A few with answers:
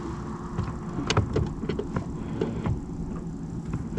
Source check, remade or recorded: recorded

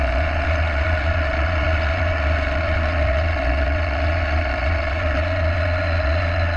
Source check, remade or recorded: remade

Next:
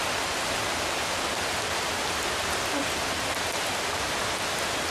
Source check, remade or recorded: recorded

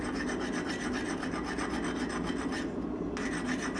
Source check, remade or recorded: recorded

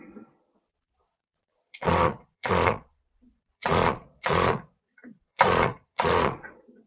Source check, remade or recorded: remade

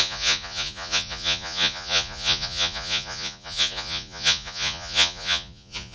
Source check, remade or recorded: remade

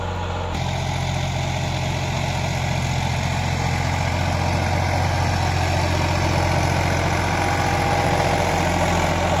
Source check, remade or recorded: recorded